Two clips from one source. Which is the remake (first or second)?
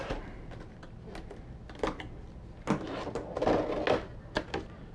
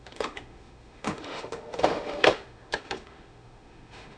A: second